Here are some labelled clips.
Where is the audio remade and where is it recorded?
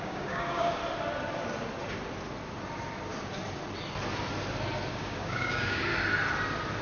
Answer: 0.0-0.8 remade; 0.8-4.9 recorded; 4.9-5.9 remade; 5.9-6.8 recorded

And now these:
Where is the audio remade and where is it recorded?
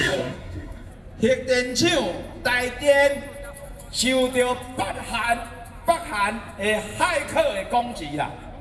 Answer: 0.0-0.9 remade; 0.9-8.6 recorded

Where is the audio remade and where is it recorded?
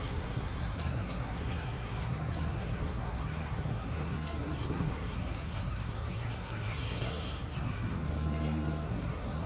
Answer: 0.0-9.5 remade